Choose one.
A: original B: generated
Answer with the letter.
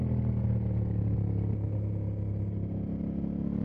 A